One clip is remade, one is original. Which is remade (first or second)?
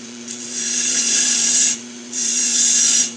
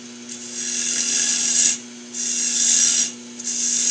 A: first